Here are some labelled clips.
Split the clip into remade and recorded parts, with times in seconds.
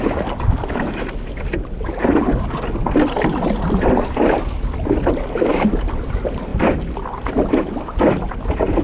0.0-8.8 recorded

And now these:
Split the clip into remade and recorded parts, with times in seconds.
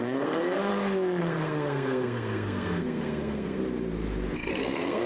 0.0-0.7 remade; 0.7-1.2 recorded; 1.2-3.6 remade; 3.6-4.5 recorded; 4.5-5.1 remade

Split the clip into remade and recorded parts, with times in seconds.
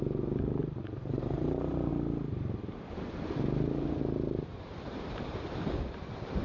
0.0-1.9 remade; 1.9-4.0 recorded; 4.0-6.4 remade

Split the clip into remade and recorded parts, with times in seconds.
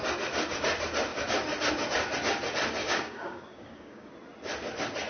0.0-2.8 recorded; 2.8-4.1 remade; 4.1-5.1 recorded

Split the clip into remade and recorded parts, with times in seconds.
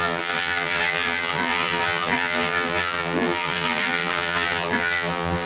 0.0-5.5 remade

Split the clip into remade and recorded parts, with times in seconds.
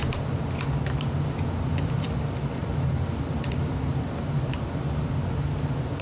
0.0-6.0 recorded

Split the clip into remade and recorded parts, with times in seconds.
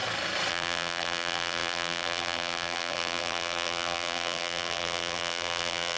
0.0-0.5 recorded; 0.5-6.0 remade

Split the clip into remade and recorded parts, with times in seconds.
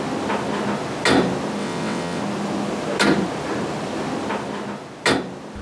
0.0-1.6 recorded; 1.6-2.2 remade; 2.2-5.6 recorded